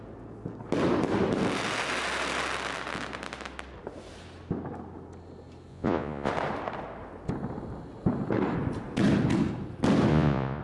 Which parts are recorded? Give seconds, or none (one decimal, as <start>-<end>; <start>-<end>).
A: 0.0-5.7; 6.3-10.1